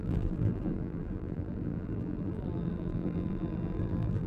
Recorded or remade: remade